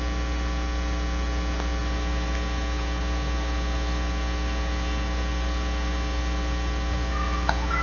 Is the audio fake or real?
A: real